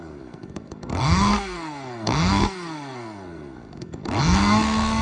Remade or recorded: remade